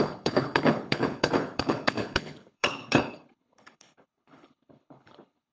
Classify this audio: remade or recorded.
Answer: remade